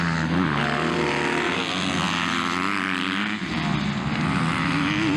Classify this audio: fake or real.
real